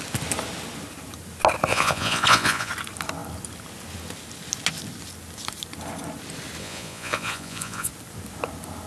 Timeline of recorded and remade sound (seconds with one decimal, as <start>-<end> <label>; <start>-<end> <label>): 0.0-1.7 recorded; 1.7-2.7 remade; 2.7-6.6 recorded; 6.6-7.9 remade; 7.9-8.9 recorded